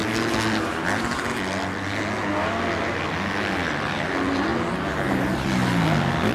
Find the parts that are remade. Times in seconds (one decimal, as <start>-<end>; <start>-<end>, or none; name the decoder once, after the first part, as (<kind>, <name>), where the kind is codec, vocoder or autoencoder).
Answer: none